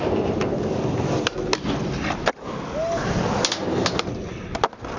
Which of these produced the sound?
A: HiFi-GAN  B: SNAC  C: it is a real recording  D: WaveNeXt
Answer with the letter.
C